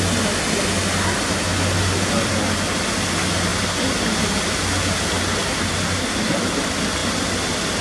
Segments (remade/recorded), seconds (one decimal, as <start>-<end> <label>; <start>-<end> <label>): 0.0-7.8 recorded